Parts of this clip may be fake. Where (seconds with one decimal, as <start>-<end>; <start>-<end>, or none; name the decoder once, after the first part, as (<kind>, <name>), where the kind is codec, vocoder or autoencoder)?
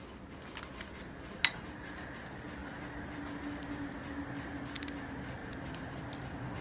none